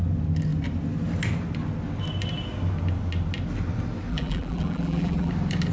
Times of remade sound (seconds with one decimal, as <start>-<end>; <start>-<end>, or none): 4.1-5.3